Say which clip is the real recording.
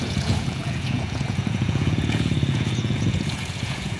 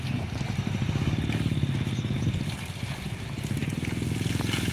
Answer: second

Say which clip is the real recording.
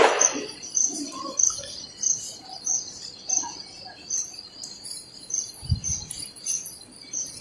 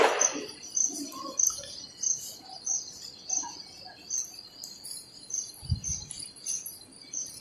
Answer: second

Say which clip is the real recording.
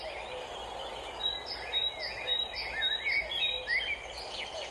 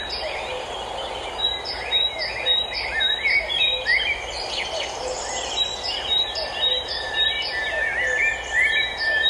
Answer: first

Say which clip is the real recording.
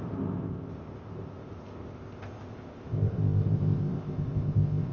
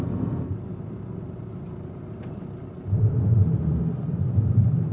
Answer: second